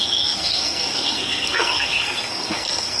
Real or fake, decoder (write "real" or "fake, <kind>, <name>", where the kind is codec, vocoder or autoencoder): fake, codec, SNAC